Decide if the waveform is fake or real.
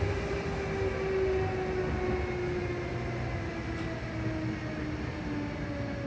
real